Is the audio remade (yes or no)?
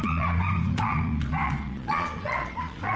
yes